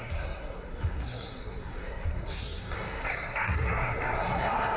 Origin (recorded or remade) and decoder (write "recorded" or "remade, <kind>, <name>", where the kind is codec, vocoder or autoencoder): remade, codec, SNAC